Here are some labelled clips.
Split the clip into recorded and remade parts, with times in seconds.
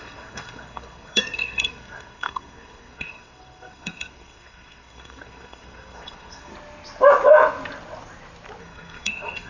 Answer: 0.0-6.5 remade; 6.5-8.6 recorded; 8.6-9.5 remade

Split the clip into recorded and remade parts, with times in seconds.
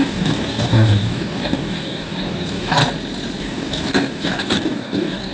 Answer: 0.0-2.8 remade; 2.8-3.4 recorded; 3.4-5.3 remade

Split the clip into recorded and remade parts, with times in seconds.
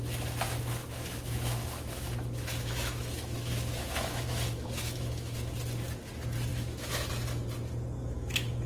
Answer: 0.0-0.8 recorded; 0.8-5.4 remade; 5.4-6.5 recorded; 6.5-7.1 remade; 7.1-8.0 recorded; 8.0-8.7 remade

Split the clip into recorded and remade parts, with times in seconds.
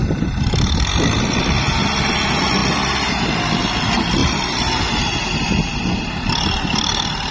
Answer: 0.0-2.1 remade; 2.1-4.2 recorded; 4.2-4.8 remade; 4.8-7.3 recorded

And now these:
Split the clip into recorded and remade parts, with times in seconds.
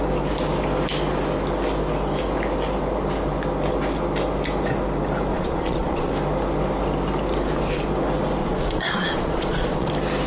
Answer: 0.0-5.3 recorded; 5.3-6.1 remade; 6.1-8.4 recorded; 8.4-9.9 remade; 9.9-10.3 recorded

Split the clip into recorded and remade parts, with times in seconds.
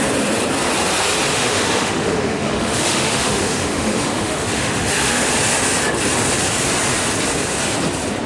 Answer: 0.0-1.3 recorded; 1.3-5.3 remade; 5.3-8.3 recorded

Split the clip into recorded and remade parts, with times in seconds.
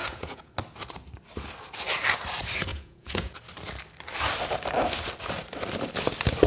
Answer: 0.0-0.5 remade; 0.5-2.7 recorded; 2.7-3.4 remade; 3.4-6.5 recorded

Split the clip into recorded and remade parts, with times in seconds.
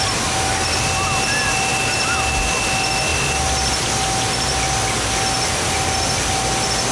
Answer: 0.0-6.9 recorded